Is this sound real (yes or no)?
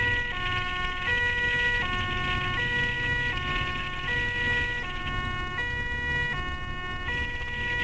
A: yes